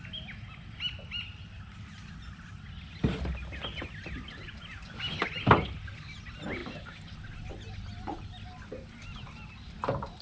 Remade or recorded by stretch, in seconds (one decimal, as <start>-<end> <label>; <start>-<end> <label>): 0.0-6.6 recorded; 6.6-7.1 remade; 7.1-10.2 recorded